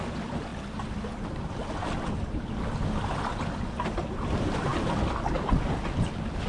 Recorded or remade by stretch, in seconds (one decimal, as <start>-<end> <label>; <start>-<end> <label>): 0.0-6.5 recorded